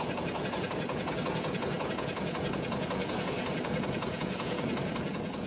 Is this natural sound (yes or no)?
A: no